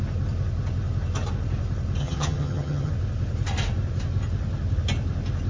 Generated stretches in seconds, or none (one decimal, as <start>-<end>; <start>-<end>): 2.0-2.9